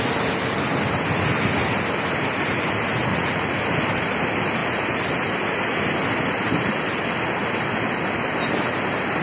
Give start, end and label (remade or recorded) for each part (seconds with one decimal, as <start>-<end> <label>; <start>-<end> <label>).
0.0-3.1 recorded; 3.1-3.6 remade; 3.6-9.2 recorded